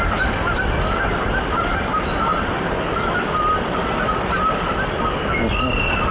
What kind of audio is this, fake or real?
real